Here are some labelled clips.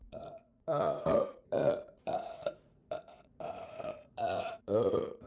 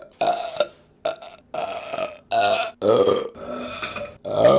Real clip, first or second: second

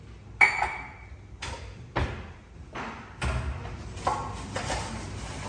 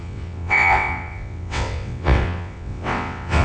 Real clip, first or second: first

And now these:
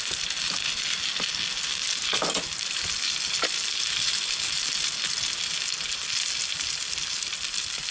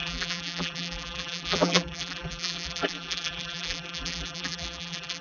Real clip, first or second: first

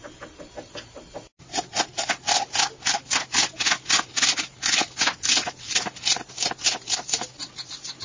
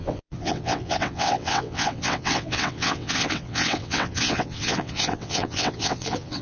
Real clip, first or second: first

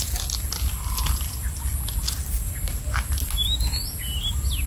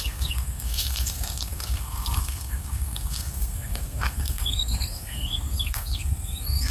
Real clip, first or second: first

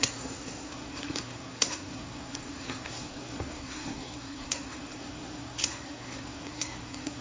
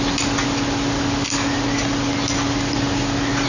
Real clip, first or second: second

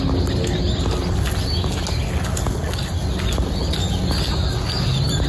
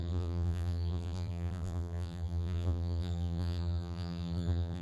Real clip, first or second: first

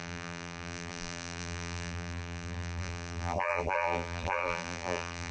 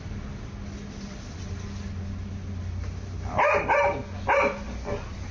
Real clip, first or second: second